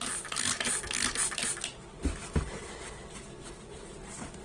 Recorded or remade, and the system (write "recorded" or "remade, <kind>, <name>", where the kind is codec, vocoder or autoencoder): recorded